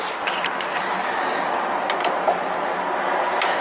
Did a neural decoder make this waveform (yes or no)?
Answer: no